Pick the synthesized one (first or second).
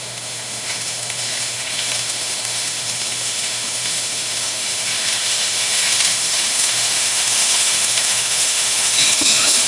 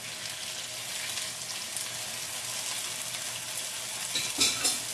first